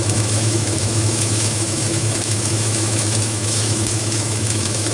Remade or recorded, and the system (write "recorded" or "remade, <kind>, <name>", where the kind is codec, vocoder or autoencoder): remade, autoencoder, DAC-VAE